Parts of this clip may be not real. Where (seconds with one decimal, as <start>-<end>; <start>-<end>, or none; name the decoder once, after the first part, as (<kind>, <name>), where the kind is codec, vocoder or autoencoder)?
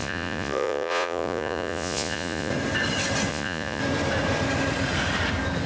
0.0-2.5 (vocoder, Vocos); 3.3-3.8